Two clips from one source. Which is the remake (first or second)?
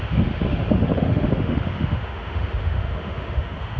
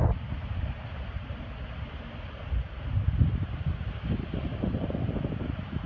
first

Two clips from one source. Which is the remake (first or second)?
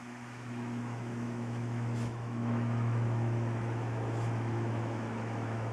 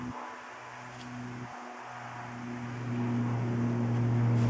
first